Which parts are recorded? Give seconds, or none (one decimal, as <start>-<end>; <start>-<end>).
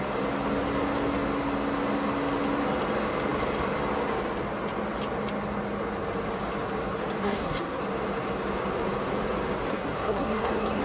0.0-7.2; 7.8-9.7